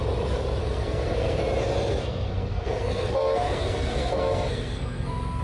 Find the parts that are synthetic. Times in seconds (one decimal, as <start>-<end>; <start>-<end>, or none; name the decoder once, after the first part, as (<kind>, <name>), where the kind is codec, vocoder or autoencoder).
0.6-1.4 (codec, SNAC); 1.9-5.4